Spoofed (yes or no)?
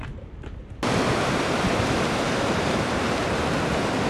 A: no